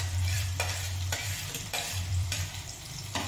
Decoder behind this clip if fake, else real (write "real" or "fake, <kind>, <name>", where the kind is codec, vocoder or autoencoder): fake, vocoder, BigVGAN v2